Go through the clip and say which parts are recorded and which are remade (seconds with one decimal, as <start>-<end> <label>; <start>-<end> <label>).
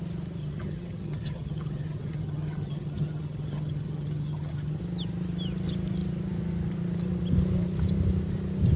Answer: 0.0-0.4 recorded; 0.4-4.8 remade; 4.8-8.8 recorded